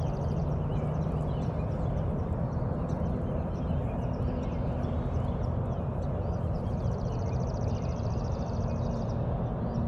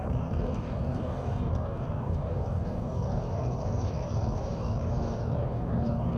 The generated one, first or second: second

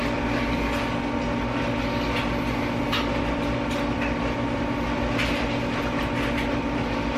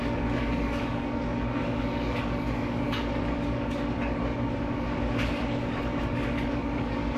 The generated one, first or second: second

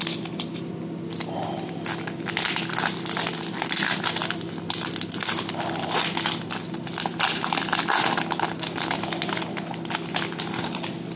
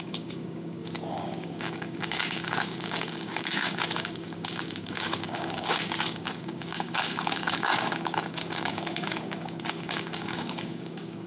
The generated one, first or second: second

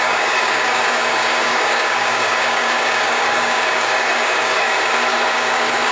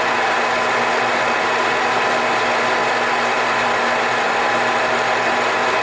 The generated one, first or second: first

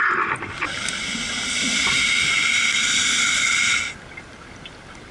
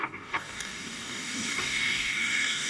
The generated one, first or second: second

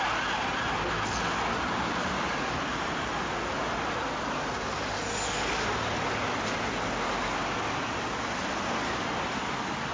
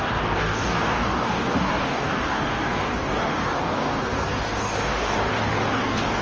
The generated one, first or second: second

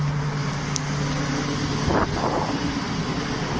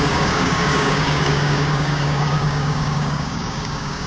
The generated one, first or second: second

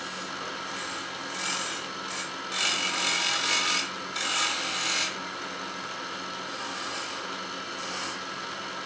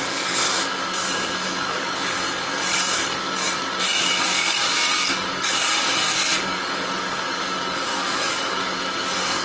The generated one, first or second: second